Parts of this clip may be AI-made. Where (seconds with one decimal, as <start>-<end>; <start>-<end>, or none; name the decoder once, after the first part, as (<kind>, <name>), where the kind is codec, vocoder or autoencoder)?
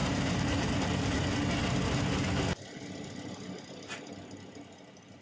0.0-1.2 (vocoder, BigVGAN v2)